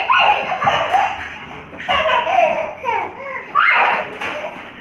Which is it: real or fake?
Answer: real